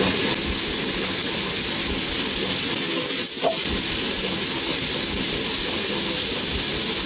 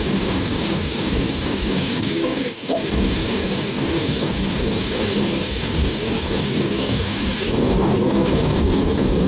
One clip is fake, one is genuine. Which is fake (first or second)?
second